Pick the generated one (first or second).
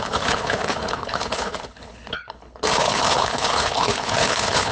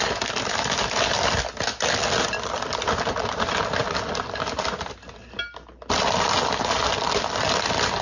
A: first